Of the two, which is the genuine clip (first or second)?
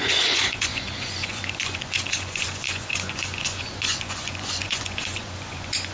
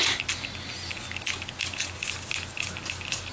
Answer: second